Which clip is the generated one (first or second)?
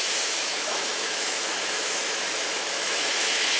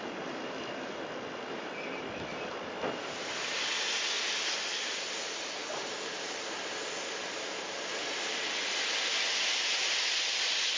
first